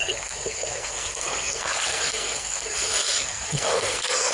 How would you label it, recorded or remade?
remade